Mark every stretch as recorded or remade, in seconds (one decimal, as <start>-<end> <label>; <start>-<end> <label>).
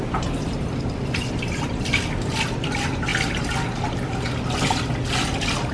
0.0-5.7 recorded